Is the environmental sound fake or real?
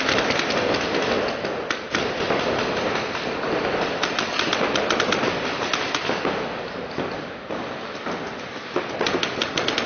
real